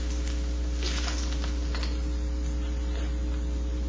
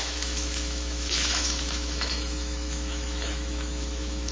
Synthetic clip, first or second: second